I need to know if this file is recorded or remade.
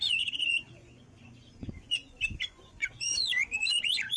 remade